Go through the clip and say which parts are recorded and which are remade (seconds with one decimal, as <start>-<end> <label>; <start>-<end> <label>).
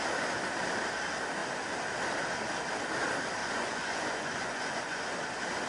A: 0.0-3.4 recorded; 3.4-5.1 remade; 5.1-5.7 recorded